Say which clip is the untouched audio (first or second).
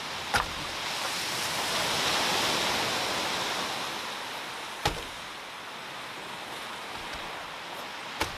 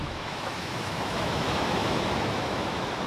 first